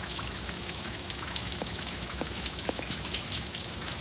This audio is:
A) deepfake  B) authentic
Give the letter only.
A